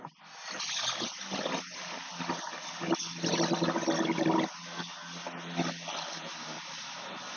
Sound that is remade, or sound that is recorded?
recorded